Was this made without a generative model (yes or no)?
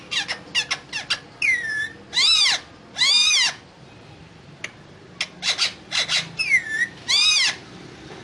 yes